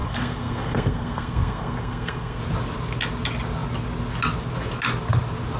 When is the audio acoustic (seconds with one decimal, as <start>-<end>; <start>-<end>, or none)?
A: 2.4-5.6